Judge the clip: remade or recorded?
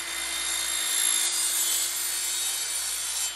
recorded